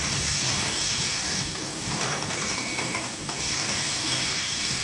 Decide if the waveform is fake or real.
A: fake